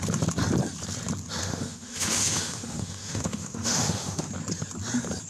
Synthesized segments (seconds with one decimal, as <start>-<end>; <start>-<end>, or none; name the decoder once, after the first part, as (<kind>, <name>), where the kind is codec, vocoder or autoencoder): 1.4-4.3 (autoencoder, DAC-VAE)